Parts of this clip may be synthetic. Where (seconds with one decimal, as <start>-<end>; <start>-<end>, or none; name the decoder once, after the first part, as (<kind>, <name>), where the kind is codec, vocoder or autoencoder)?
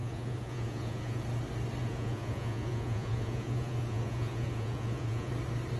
0.0-1.2 (vocoder, Vocos); 1.8-5.3